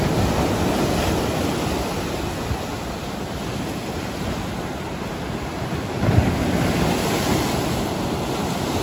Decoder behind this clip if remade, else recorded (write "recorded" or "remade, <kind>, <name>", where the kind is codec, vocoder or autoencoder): recorded